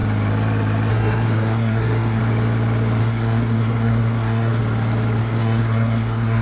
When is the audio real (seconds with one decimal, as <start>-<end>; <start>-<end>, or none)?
0.0-0.9; 2.2-3.0; 4.6-5.2